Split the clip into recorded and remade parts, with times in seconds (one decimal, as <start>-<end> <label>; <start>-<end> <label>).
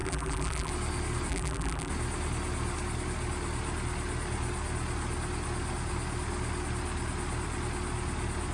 0.0-0.7 remade; 0.7-1.3 recorded; 1.3-1.9 remade; 1.9-8.5 recorded